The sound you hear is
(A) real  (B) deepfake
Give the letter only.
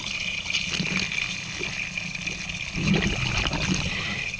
A